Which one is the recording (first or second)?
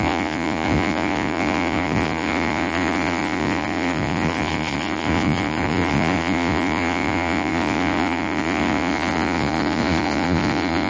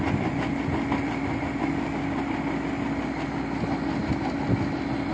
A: second